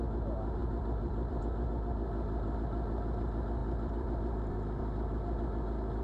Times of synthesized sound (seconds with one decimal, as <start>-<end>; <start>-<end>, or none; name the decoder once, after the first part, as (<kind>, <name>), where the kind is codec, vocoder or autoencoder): 0.6-1.4 (vocoder, BigVGAN v2); 3.6-4.4